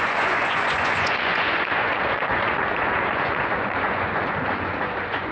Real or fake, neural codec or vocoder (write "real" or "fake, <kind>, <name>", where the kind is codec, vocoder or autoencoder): fake, vocoder, Vocos